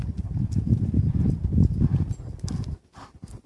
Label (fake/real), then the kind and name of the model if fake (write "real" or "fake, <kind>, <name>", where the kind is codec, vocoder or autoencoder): real